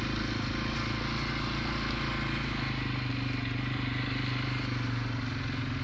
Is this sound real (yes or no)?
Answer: yes